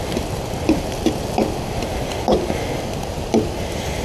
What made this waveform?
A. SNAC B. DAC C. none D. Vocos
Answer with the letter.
C